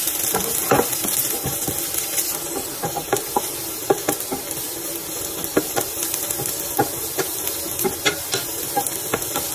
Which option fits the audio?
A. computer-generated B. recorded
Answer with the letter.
B